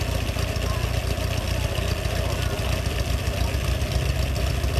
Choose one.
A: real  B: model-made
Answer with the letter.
A